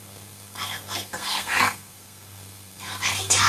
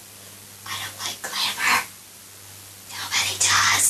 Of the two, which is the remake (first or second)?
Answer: first